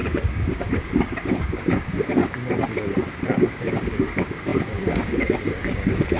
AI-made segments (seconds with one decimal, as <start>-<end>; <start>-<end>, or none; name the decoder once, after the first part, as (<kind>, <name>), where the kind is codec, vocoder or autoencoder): 0.0-2.2 (codec, DAC); 3.3-6.2